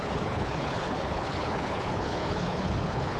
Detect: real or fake fake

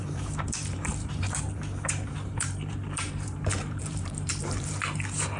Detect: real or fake fake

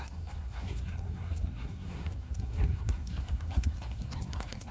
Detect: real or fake fake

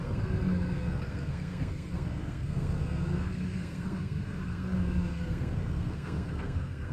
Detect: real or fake fake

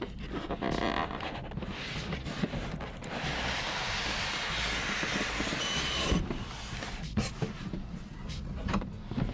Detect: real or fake real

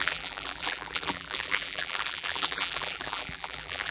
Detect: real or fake fake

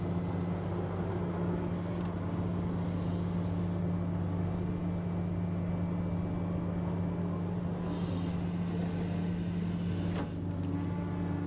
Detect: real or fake real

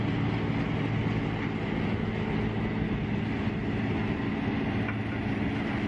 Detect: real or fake real